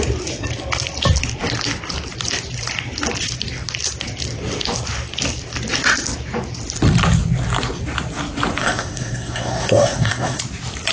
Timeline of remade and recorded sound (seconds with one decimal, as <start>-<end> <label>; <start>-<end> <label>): 0.0-8.6 recorded; 8.6-10.4 remade; 10.4-10.9 recorded